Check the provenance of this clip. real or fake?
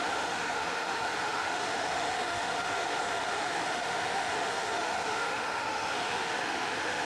fake